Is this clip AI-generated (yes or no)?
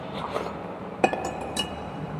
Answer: yes